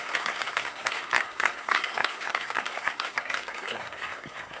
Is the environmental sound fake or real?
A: fake